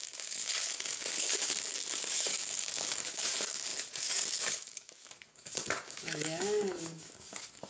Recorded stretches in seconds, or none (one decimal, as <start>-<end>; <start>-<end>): none